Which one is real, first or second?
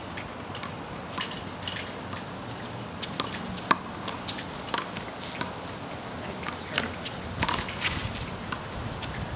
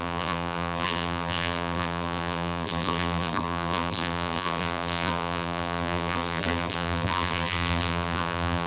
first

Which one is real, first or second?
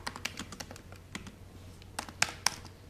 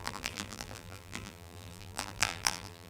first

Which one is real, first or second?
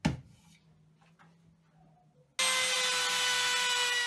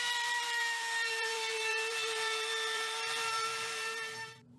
first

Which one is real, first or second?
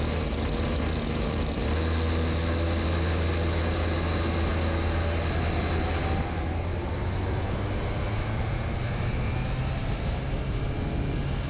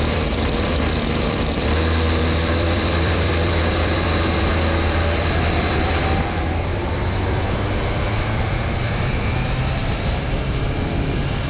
first